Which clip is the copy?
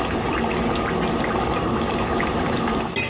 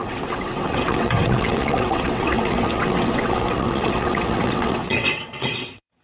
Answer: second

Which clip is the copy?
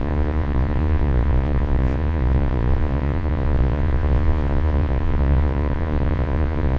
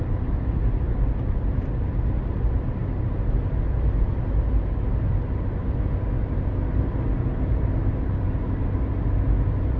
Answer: first